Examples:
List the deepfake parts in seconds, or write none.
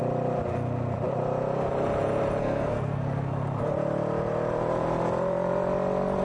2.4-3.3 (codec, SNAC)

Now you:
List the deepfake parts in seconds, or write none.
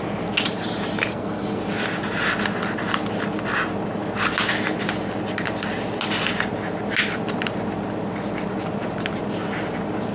1.1-1.6 (codec, SNAC)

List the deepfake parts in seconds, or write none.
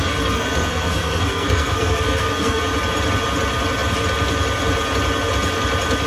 0.0-2.6 (codec, SNAC)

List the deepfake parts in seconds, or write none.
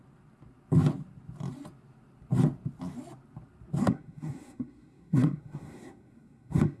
3.8-6.8 (codec, SNAC)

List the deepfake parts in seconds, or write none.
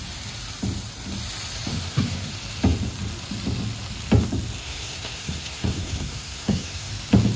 1.7-2.3 (codec, SNAC); 4.6-6.9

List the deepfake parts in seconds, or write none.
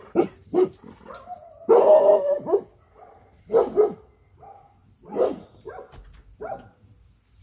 none